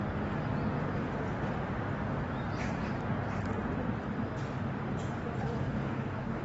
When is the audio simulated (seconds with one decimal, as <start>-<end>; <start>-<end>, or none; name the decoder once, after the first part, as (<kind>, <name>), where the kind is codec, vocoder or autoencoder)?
5.4-6.4 (codec, DAC)